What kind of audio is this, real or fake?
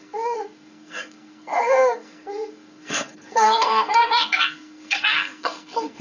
fake